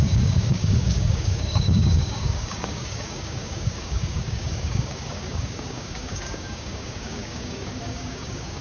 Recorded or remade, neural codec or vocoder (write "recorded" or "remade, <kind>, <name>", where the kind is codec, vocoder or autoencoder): remade, codec, DAC